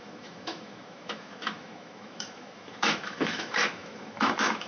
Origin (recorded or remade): remade